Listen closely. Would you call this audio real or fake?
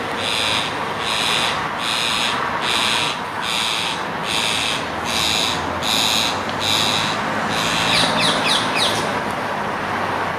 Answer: real